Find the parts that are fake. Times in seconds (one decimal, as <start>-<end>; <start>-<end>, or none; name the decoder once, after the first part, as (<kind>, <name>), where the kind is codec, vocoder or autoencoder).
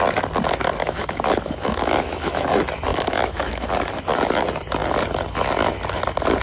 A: 0.8-2.5 (autoencoder, DAC-VAE); 2.9-3.7